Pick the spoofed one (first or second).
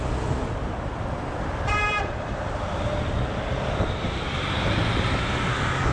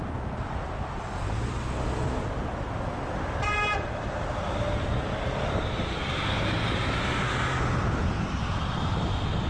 first